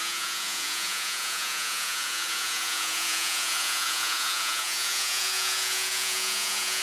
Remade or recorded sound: remade